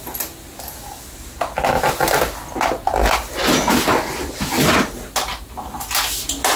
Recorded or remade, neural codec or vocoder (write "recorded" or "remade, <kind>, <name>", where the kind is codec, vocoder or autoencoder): recorded